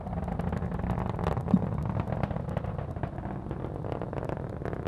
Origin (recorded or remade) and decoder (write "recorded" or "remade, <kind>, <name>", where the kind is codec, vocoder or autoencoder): recorded